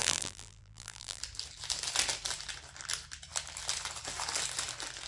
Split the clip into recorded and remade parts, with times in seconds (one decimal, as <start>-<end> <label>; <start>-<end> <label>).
0.0-1.2 remade; 1.2-5.1 recorded